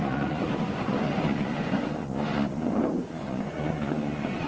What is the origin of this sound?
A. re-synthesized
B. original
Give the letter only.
A